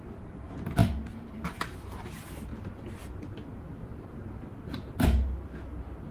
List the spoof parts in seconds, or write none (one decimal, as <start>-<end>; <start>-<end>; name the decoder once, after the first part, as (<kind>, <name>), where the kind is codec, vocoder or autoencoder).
0.8-1.8 (vocoder, BigVGAN v2)